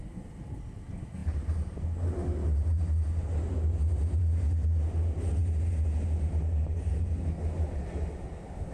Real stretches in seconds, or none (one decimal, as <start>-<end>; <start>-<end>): 0.0-8.7